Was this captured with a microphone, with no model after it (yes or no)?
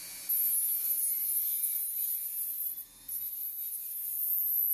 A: yes